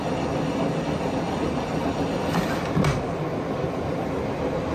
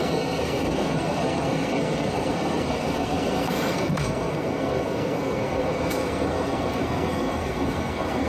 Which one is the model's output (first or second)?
second